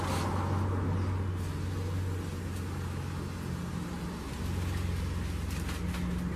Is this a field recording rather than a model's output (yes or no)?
yes